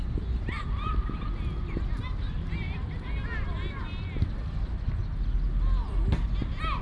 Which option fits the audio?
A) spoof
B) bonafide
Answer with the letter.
B